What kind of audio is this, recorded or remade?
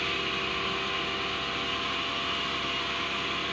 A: recorded